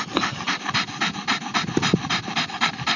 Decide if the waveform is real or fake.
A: real